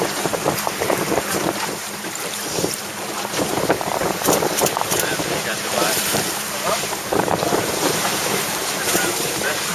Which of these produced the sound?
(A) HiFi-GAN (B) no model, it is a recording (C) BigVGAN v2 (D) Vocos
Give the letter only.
C